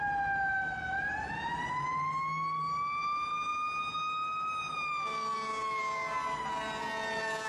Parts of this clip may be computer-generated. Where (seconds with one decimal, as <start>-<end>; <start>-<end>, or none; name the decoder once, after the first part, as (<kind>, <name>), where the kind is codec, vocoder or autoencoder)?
none